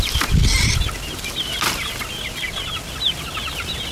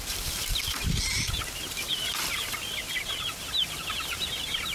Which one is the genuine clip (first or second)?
first